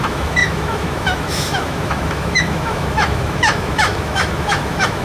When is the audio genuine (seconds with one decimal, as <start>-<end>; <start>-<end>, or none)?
none